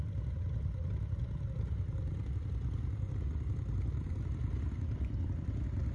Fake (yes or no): yes